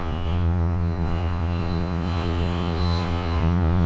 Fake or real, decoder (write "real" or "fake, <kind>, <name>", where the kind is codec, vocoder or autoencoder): fake, vocoder, Vocos